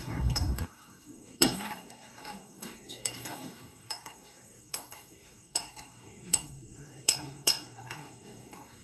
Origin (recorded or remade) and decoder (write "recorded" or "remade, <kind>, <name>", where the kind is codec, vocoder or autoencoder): remade, codec, SNAC